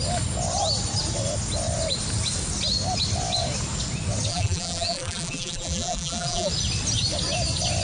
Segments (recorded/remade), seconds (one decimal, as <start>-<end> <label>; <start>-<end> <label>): 0.0-4.3 recorded; 4.3-6.5 remade; 6.5-7.8 recorded